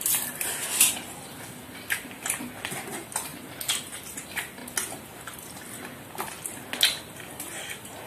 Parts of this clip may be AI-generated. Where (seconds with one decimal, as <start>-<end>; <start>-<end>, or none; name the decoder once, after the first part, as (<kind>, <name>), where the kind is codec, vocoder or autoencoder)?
none